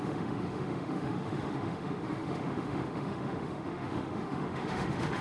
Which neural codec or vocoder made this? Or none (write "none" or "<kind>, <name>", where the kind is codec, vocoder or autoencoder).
autoencoder, DAC-VAE